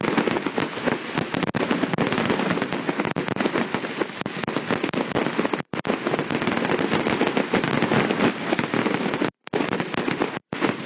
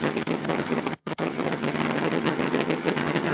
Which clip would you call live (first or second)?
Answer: first